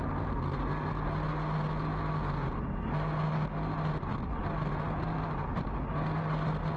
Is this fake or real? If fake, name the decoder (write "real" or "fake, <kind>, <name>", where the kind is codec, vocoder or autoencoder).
real